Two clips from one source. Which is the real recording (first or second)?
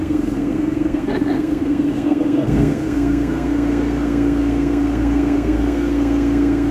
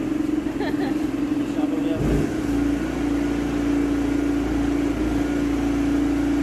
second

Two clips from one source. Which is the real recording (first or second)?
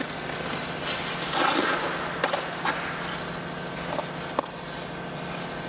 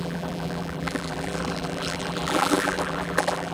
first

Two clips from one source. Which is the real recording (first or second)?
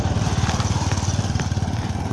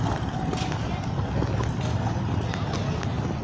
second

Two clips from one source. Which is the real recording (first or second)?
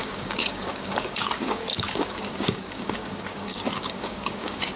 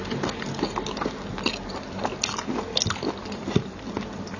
second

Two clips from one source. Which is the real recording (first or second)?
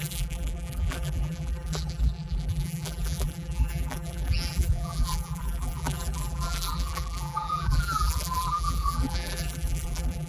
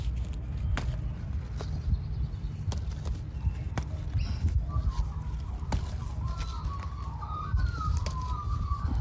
second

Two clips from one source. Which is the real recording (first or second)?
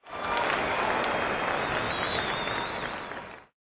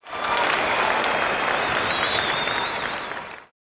first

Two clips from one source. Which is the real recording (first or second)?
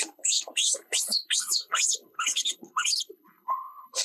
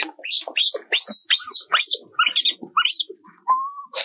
second